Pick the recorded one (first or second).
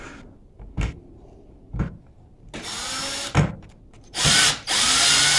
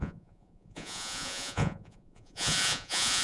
first